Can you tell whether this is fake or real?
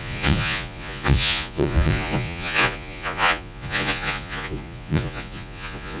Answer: fake